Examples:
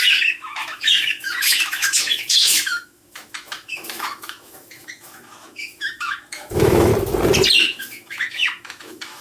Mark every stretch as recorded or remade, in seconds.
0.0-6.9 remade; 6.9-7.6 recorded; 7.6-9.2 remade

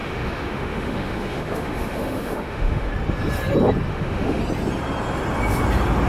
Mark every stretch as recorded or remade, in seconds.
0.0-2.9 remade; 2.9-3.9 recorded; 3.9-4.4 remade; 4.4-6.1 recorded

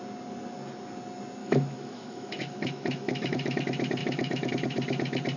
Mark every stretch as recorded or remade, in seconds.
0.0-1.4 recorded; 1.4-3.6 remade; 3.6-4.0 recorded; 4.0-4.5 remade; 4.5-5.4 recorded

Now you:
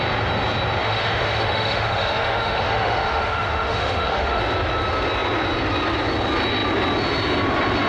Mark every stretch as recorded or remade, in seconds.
0.0-0.8 recorded; 0.8-4.4 remade; 4.4-7.9 recorded